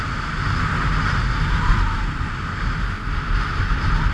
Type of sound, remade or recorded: recorded